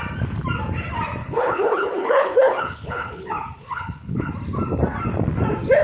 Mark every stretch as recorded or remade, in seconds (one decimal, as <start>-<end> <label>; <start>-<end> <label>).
0.0-1.2 recorded; 1.2-4.3 remade; 4.3-5.8 recorded